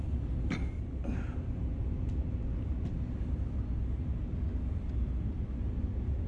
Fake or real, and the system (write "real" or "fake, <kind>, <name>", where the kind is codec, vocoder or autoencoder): real